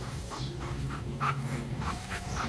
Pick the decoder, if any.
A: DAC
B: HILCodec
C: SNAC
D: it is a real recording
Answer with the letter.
A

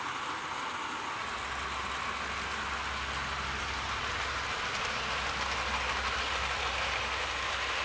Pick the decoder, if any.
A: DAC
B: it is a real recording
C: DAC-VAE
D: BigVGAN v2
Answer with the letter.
B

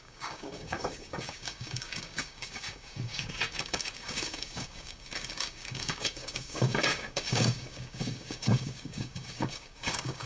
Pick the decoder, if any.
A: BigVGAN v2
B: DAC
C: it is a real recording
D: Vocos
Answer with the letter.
B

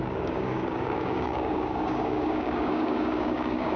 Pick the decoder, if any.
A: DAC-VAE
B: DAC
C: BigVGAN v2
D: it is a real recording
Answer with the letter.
B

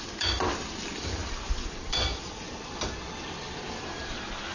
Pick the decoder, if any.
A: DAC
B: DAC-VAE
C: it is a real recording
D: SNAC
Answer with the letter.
C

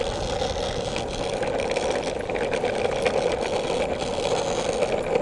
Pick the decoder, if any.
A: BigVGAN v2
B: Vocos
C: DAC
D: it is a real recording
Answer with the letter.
D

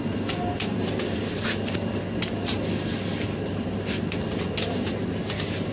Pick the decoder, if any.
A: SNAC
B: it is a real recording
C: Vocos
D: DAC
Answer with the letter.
B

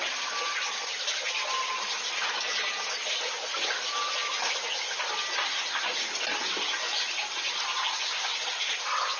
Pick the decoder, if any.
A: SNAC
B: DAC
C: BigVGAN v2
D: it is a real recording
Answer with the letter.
D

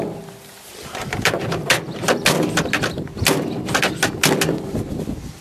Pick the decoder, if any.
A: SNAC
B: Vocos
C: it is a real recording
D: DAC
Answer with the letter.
C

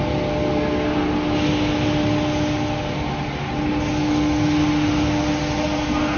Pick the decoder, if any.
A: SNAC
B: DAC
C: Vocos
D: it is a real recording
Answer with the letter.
D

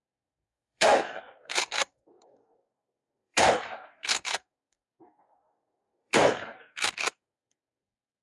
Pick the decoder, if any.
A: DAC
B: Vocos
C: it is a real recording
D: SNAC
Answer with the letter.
A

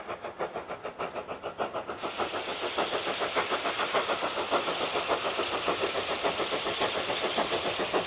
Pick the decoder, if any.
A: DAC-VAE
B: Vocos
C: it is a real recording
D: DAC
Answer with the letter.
C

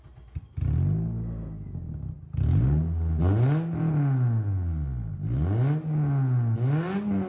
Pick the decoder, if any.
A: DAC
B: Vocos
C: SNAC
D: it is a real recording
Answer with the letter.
D